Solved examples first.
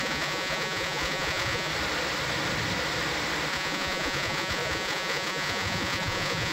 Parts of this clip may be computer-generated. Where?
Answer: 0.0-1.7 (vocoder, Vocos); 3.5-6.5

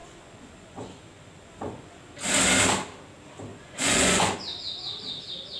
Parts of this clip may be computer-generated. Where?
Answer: 0.0-2.0 (vocoder, Vocos); 3.5-4.3